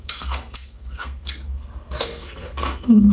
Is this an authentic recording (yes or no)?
no